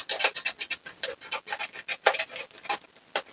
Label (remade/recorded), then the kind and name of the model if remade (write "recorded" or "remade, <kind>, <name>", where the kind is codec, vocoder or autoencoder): recorded